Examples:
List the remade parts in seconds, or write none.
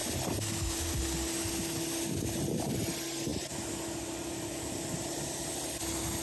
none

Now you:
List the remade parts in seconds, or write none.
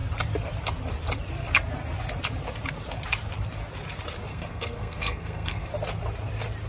4.3-5.7 (codec, SNAC)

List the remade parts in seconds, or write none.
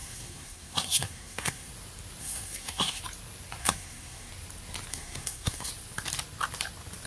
0.0-1.7 (codec, SNAC); 2.2-3.0; 3.6-4.3; 4.9-5.7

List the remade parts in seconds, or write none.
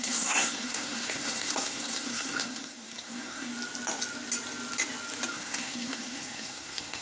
0.0-3.5 (codec, SNAC); 5.3-7.0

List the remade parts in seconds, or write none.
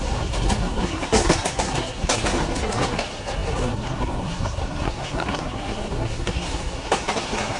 0.0-7.6 (codec, SNAC)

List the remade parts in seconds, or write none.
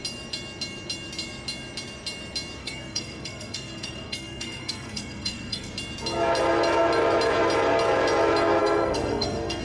2.6-5.7 (codec, SNAC); 8.6-9.6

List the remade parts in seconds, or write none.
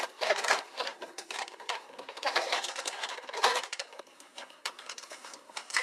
0.0-5.8 (codec, SNAC)